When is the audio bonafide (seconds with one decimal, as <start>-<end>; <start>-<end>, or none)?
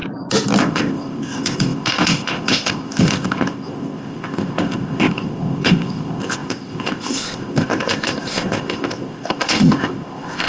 0.0-0.6